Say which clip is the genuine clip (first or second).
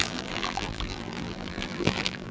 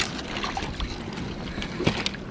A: second